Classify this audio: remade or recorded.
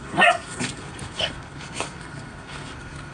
remade